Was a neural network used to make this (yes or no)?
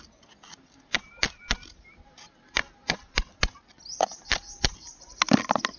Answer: no